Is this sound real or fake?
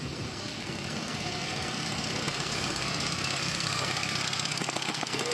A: fake